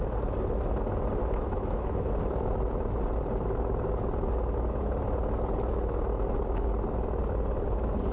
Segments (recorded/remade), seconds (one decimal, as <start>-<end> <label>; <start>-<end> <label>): 0.0-1.2 recorded; 1.2-2.1 remade; 2.1-8.1 recorded

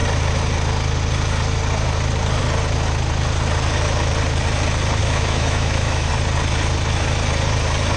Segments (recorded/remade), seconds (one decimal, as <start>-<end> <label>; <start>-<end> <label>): 0.0-5.0 recorded; 5.0-6.1 remade; 6.1-8.0 recorded

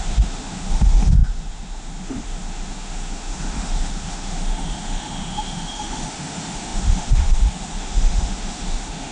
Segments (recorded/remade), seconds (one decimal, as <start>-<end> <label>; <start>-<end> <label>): 0.0-9.1 remade

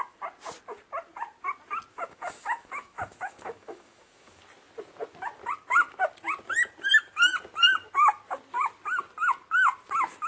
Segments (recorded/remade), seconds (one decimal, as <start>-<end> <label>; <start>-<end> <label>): 0.0-1.9 recorded; 1.9-4.4 remade; 4.4-10.3 recorded